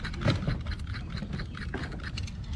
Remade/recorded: recorded